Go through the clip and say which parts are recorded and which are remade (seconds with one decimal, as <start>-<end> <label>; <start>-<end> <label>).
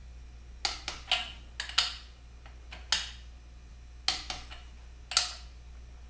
0.0-6.1 recorded